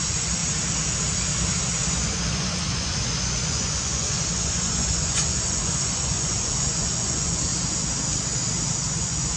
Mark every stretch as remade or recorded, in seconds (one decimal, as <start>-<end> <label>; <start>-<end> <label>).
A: 0.0-0.4 remade; 0.4-1.9 recorded; 1.9-7.5 remade; 7.5-8.9 recorded; 8.9-9.4 remade